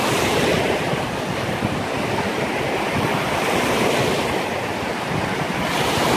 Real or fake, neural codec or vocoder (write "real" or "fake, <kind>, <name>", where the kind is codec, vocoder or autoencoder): real